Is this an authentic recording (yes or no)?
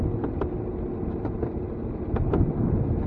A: yes